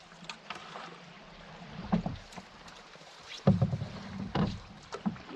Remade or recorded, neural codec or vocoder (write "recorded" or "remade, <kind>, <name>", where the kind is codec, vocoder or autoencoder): recorded